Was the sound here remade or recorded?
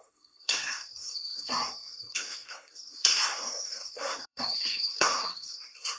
remade